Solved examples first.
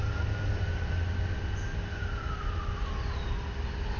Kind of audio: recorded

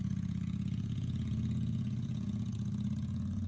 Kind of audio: remade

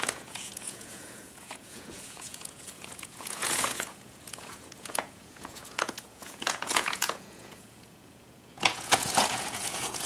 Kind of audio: remade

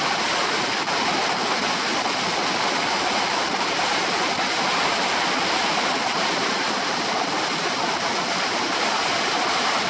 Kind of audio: recorded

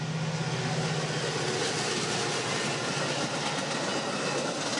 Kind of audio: recorded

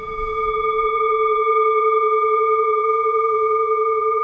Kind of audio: remade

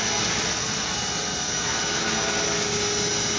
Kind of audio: recorded